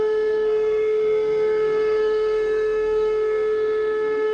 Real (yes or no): no